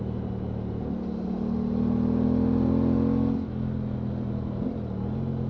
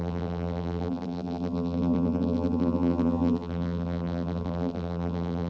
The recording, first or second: first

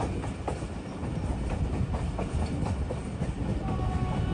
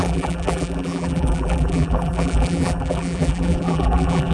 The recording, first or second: first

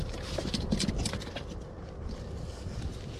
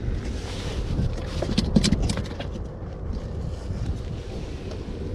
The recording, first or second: second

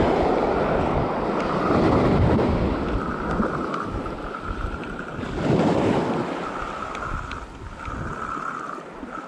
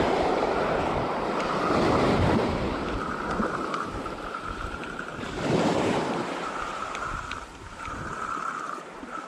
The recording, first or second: first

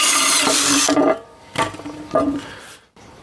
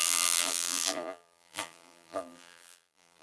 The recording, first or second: first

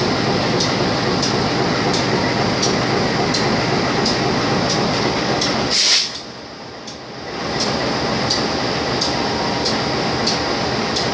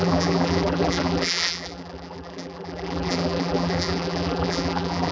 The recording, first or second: first